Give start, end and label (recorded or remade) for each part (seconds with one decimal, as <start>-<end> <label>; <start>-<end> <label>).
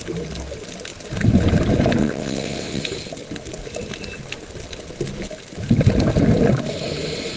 0.0-2.0 recorded; 2.0-2.8 remade; 2.8-7.4 recorded